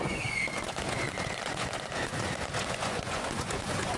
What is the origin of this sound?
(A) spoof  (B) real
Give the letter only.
A